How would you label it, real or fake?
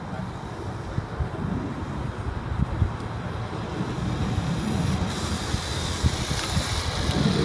real